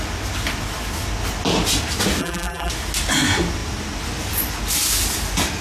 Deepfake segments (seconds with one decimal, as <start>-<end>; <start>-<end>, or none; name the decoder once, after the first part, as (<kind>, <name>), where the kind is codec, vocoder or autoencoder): 2.2-2.7 (vocoder, BigVGAN v2)